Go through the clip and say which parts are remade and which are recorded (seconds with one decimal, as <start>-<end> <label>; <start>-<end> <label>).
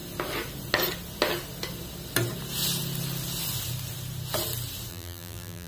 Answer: 0.0-4.9 recorded; 4.9-5.7 remade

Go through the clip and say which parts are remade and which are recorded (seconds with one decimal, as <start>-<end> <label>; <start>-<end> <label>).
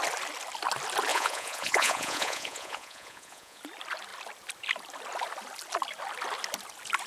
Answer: 0.0-1.1 recorded; 1.1-3.6 remade; 3.6-7.1 recorded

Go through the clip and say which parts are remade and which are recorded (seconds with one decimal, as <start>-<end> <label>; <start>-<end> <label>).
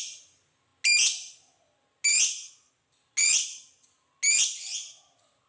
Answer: 0.0-5.5 recorded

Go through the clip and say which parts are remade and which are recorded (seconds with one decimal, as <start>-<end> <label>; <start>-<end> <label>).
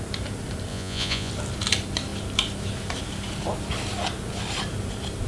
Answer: 0.0-0.7 recorded; 0.7-1.3 remade; 1.3-5.3 recorded